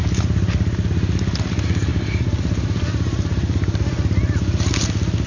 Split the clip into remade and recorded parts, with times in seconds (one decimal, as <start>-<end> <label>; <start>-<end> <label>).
0.0-1.9 recorded; 1.9-4.7 remade; 4.7-5.3 recorded